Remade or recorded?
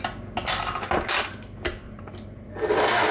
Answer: recorded